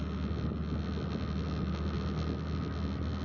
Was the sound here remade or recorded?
recorded